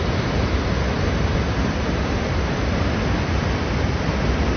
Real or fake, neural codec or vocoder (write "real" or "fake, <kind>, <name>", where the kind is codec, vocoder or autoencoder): real